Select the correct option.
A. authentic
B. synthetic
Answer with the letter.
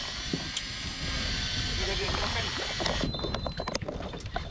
A